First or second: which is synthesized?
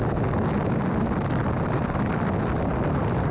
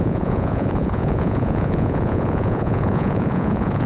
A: second